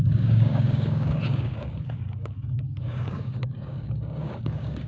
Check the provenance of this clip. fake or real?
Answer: fake